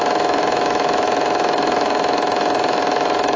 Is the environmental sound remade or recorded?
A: remade